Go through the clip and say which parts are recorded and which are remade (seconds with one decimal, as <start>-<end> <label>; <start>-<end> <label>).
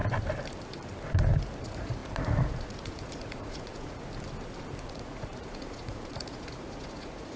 0.0-1.6 recorded; 1.6-4.0 remade; 4.0-4.8 recorded; 4.8-7.4 remade